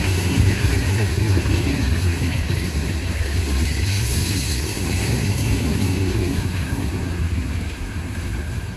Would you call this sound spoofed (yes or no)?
yes